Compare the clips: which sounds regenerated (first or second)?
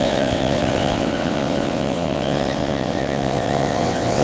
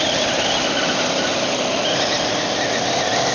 first